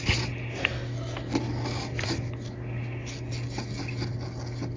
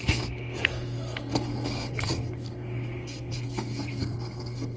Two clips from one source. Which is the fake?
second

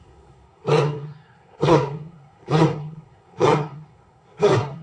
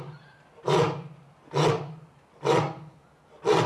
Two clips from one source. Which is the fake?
first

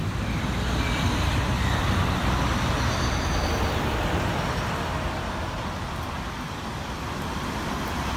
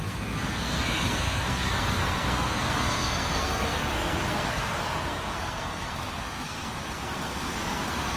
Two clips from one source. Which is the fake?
second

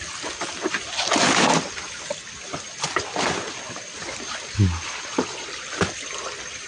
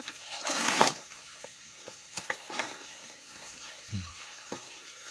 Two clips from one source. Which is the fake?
second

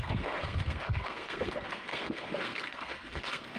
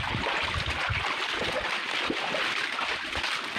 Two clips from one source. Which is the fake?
first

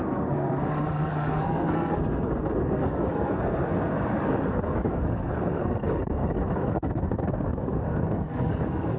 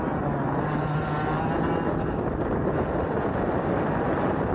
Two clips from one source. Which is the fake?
first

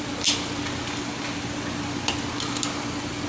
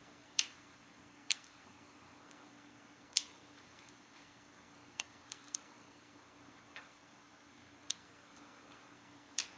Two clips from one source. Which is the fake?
second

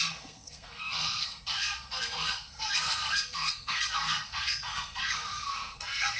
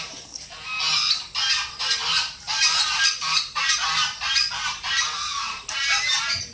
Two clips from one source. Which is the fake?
first